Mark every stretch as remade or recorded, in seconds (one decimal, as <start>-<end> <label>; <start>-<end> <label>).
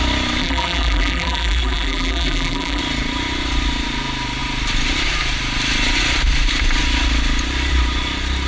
0.0-0.4 recorded; 0.4-2.8 remade; 2.8-8.5 recorded